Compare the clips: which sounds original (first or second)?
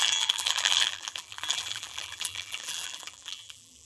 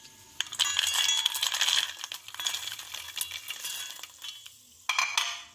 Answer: second